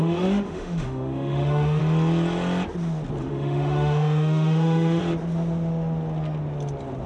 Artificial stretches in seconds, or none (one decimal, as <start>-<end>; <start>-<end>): 0.0-1.8; 3.2-5.0